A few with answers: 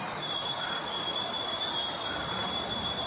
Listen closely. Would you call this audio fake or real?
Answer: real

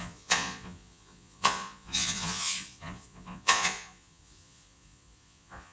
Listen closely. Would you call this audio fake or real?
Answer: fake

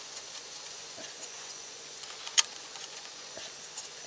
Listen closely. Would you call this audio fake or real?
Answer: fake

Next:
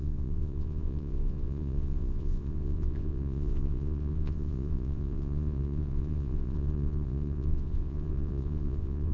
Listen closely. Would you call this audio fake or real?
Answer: fake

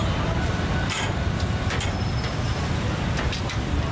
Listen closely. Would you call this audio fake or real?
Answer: real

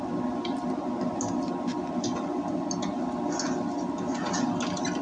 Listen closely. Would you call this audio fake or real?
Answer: real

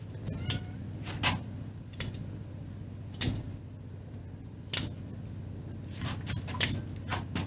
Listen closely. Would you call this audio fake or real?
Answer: real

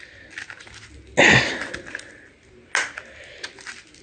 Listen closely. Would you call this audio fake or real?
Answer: real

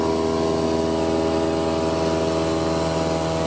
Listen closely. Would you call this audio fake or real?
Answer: real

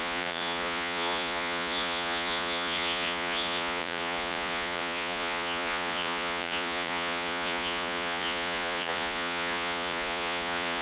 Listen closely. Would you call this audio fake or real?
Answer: fake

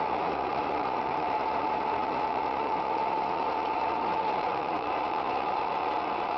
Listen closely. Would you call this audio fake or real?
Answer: fake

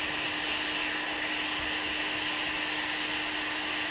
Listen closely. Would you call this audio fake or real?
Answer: real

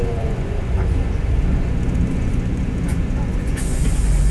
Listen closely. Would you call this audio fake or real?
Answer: fake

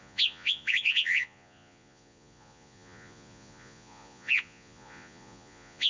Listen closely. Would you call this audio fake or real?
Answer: fake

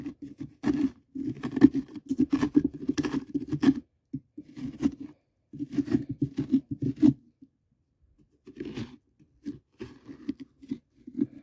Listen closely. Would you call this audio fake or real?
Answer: real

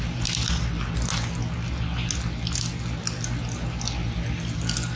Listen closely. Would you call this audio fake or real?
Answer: real